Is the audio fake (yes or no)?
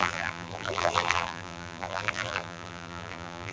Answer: yes